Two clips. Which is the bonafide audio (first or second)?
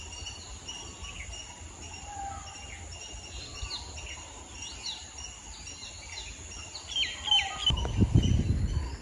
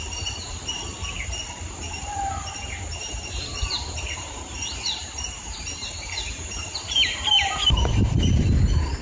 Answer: first